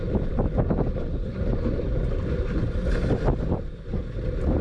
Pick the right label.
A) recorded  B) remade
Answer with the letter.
A